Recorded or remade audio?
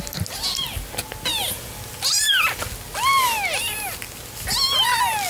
recorded